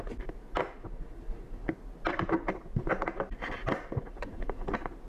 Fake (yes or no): no